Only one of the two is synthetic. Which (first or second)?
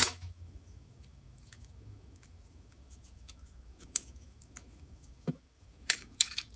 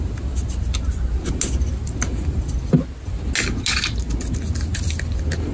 first